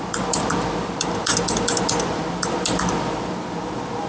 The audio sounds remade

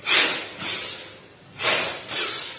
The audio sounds recorded